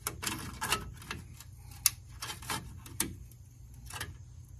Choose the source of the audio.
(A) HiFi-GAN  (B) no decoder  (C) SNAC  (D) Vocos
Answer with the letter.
B